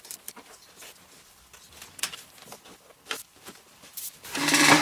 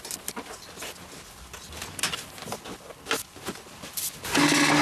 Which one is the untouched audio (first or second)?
second